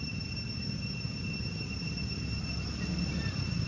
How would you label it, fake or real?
fake